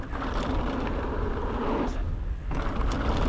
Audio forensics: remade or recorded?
recorded